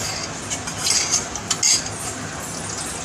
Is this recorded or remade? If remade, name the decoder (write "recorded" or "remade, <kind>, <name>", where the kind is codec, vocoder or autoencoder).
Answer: recorded